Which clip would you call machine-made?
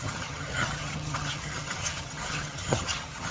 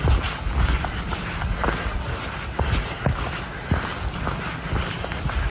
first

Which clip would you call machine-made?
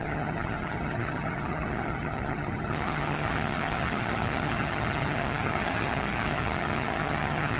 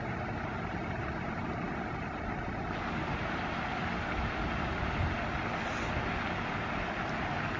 first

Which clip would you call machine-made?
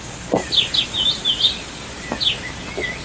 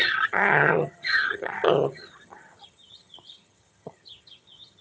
second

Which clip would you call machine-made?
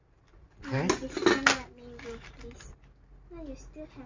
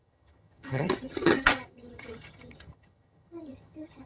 second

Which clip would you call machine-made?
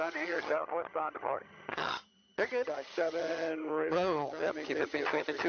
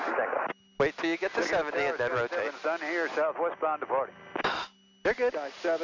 first